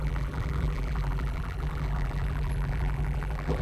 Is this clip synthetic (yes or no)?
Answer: yes